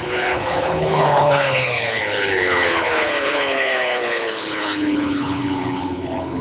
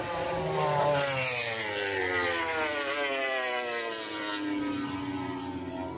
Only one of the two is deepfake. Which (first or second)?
first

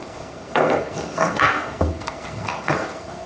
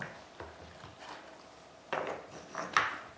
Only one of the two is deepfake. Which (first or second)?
first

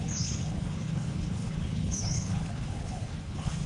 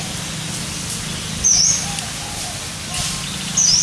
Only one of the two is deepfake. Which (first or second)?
first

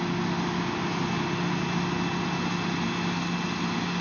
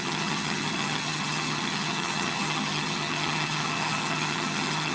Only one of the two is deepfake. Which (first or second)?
second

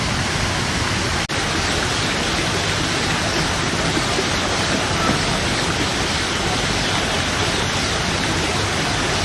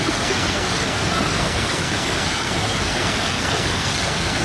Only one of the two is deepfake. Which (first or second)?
second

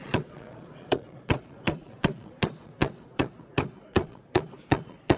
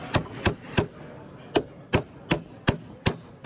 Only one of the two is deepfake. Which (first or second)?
first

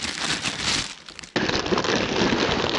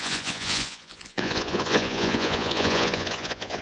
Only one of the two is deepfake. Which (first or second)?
second